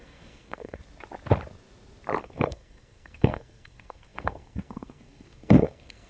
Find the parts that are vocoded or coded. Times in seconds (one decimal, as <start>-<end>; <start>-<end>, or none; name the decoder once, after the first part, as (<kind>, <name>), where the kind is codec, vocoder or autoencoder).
0.0-0.8 (codec, SNAC); 2.2-6.1